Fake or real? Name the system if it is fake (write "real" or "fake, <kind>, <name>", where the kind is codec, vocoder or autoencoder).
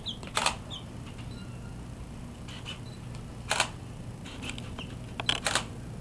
real